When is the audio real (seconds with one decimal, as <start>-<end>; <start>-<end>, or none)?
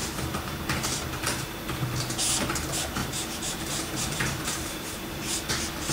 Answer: 0.6-3.0; 5.5-5.9